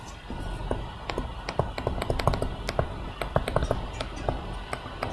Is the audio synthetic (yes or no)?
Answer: no